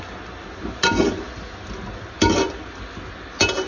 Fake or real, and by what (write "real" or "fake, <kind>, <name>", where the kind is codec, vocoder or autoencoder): real